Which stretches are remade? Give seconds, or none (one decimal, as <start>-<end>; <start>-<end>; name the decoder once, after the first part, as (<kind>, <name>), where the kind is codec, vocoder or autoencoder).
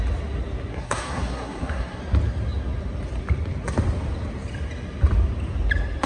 0.7-2.0 (codec, SNAC)